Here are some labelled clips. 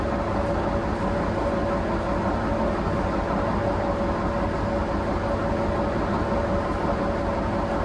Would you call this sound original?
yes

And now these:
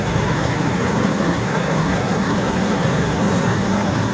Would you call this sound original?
no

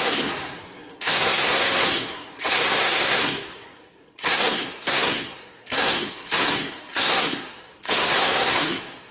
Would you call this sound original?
no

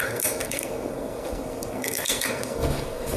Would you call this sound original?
no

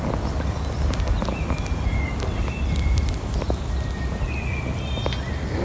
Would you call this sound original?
yes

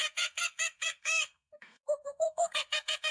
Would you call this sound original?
no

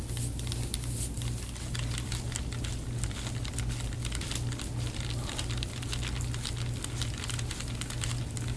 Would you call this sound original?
yes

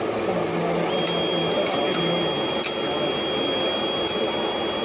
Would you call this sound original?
yes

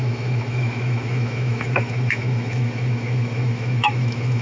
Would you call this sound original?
no